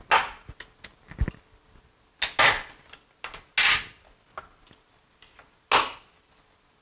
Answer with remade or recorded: recorded